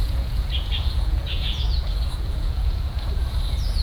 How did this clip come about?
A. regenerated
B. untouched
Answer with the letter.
A